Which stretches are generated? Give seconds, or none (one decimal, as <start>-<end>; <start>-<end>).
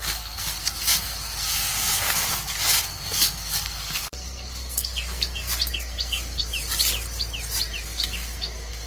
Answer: 0.0-6.5; 7.8-8.9